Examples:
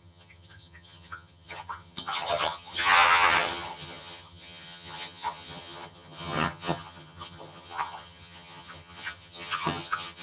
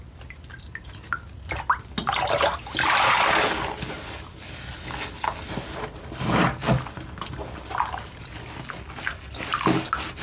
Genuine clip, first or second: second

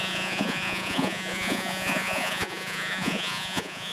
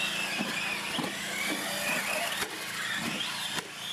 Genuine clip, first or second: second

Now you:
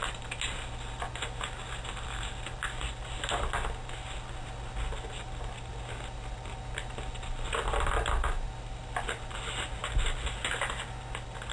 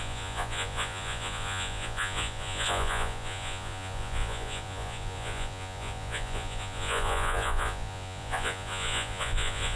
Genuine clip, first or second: first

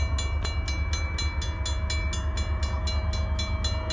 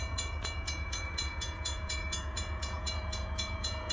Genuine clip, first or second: first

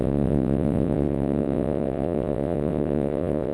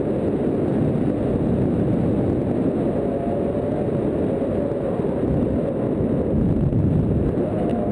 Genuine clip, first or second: second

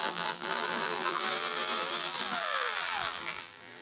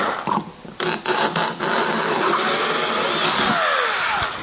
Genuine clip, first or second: second